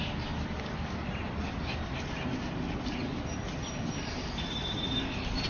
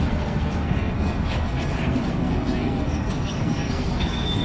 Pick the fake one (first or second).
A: second